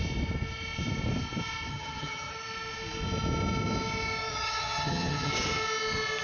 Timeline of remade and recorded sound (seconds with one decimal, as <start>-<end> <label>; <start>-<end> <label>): 0.0-1.7 recorded; 1.7-2.3 remade; 2.3-4.3 recorded; 4.3-5.3 remade; 5.3-6.2 recorded